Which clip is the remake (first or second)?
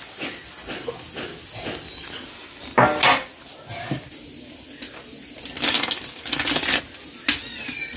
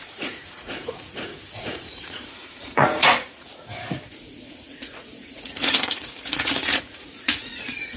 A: second